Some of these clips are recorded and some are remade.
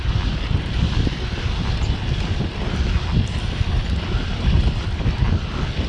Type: recorded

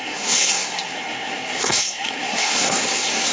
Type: remade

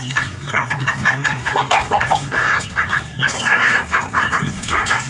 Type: remade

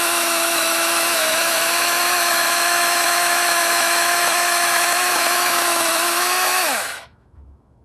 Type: remade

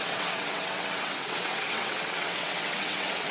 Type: remade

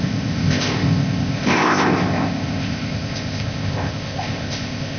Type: remade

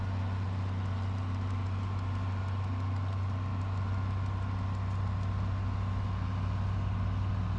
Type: recorded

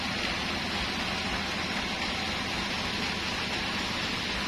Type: recorded